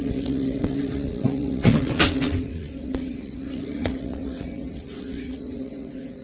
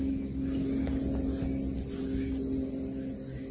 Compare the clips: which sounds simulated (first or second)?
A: first